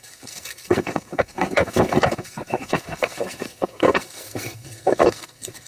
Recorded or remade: remade